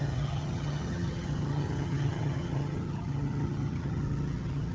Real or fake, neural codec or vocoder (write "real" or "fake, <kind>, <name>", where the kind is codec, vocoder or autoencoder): fake, vocoder, HiFi-GAN